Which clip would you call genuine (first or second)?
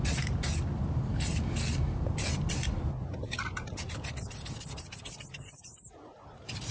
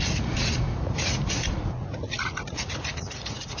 first